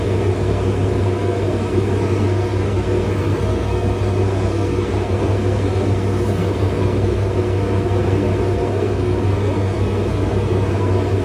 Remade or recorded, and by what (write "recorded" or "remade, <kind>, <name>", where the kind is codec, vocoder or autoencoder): remade, codec, SNAC